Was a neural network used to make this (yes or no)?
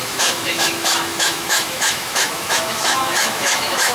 yes